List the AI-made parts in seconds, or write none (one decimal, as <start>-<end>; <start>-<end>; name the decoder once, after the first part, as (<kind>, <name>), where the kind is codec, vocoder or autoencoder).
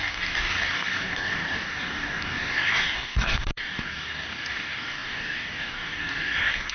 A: 0.0-6.7 (codec, DAC)